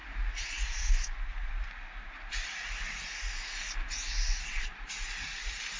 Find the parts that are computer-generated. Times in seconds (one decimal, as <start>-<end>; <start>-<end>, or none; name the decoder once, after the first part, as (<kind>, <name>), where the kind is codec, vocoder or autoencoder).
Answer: none